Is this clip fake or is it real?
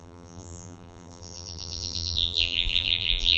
fake